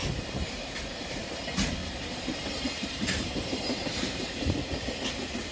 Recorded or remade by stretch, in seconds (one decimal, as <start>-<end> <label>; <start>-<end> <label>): 0.0-1.2 remade; 1.2-1.8 recorded; 1.8-4.9 remade; 4.9-5.5 recorded